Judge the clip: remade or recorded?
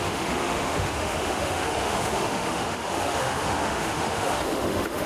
remade